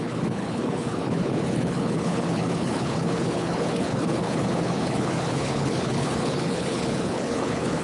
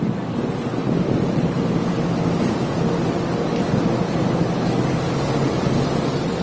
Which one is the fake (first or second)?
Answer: first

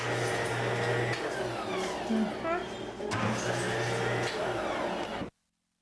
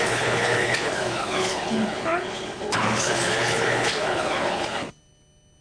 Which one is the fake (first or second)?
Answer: second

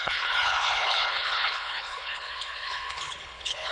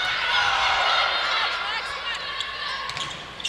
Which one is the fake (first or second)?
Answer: first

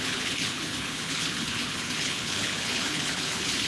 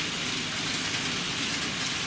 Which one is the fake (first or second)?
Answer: first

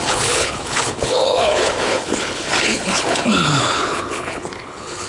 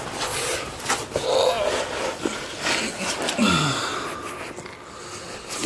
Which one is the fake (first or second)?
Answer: first